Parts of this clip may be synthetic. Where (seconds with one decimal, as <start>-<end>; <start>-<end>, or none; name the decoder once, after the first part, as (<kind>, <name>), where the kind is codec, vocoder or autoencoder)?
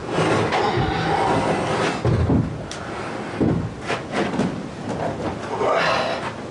none